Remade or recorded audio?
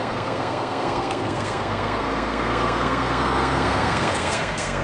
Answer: remade